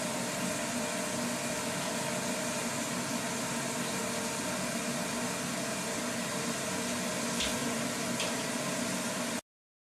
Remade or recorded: recorded